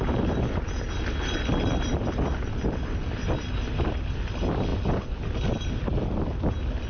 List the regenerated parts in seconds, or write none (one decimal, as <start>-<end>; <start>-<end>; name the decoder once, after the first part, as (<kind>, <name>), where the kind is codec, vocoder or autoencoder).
none